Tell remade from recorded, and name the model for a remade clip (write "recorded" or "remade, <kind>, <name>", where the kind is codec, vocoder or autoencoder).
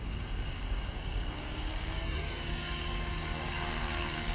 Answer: remade, codec, DAC